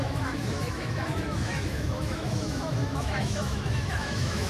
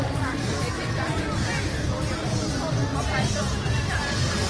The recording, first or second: second